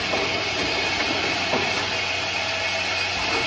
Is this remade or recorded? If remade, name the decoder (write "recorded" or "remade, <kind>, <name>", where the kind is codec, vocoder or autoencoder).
recorded